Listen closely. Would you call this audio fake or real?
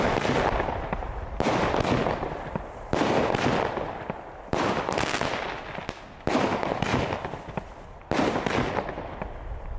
real